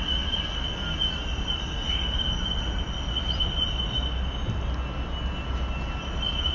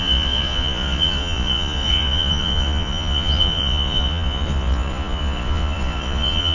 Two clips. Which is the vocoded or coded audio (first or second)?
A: second